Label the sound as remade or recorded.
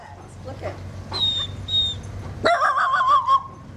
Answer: recorded